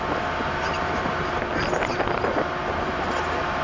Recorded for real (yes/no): yes